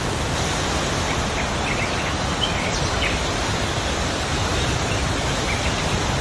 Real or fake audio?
real